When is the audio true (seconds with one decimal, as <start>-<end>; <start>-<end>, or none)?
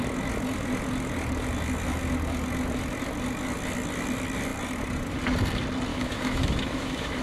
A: 0.0-5.9